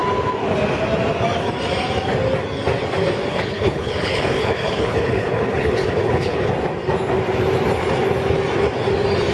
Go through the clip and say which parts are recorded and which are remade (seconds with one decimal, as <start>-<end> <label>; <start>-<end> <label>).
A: 0.0-3.3 recorded; 3.3-6.5 remade; 6.5-9.3 recorded